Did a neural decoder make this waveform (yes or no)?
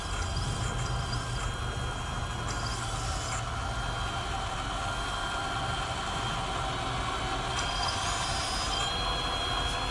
no